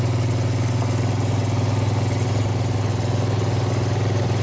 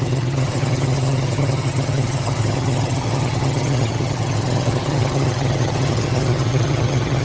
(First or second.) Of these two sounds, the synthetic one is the second